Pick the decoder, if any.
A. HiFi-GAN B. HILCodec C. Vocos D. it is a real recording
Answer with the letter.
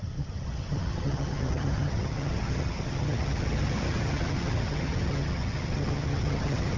A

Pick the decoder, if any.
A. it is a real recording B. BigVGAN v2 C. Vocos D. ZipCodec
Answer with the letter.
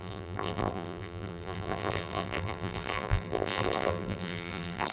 B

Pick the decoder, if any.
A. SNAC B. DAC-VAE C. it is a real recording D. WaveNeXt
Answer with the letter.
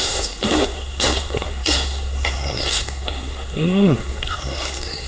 A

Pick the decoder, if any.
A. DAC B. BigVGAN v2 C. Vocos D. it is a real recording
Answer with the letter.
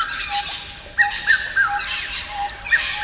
D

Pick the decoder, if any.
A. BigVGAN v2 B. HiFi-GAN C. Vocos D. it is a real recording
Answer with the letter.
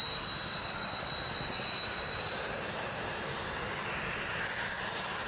D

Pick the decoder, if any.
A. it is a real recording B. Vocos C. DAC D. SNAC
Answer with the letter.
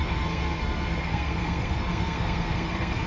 D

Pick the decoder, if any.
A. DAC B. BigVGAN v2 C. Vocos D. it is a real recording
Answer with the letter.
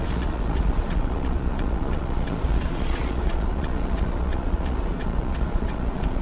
C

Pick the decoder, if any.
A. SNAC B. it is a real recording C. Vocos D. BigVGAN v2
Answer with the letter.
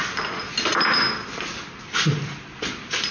B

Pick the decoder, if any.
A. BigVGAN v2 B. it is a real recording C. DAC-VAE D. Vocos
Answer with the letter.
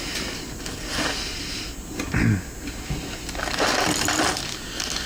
B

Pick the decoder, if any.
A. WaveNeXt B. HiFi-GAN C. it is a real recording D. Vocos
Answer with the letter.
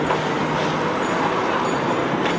C